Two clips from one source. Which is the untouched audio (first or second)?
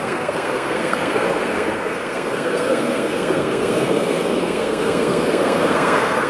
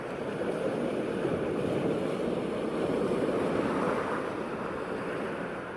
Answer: second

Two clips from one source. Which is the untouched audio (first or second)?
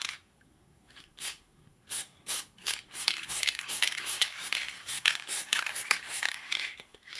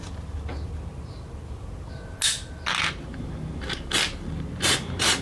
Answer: second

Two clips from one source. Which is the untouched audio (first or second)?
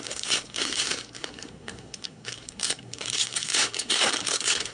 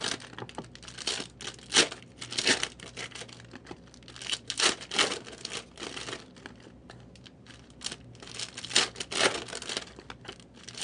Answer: second